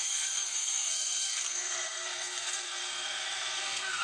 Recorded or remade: remade